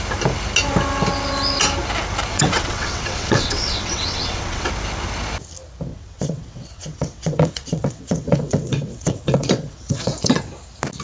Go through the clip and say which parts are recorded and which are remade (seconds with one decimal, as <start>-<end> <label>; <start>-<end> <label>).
0.0-2.3 recorded; 2.3-4.7 remade; 4.7-5.9 recorded; 5.9-10.5 remade; 10.5-11.0 recorded